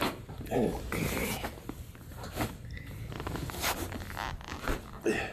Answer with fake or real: real